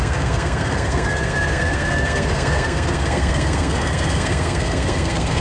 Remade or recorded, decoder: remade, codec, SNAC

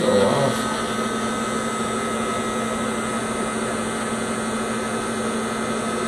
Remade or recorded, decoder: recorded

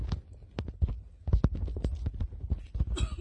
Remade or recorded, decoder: recorded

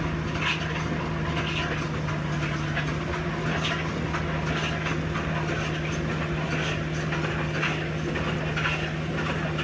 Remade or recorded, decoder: recorded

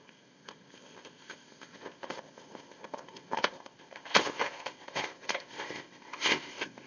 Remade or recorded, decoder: remade, codec, ZipCodec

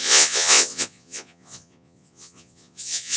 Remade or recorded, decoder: remade, vocoder, Vocos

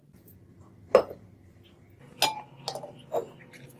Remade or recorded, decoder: recorded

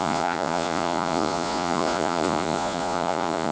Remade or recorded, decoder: remade, vocoder, Vocos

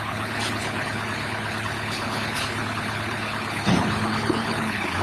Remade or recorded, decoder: remade, codec, HILCodec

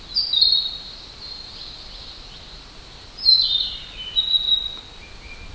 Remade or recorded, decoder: recorded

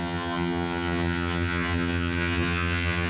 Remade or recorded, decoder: remade, vocoder, HiFi-GAN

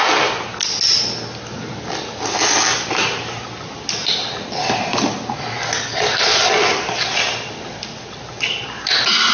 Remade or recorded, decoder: recorded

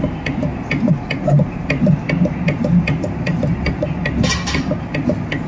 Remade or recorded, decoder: recorded